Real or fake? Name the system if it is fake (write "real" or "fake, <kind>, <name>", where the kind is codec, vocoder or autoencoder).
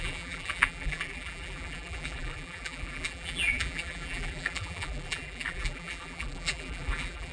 fake, vocoder, BigVGAN v2